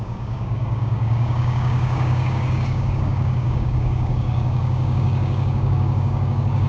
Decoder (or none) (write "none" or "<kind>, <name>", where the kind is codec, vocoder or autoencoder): codec, DAC